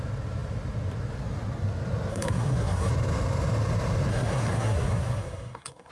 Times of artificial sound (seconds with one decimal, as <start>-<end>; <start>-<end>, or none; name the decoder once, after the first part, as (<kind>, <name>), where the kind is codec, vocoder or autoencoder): 2.1-2.9 (codec, SNAC); 4.1-5.9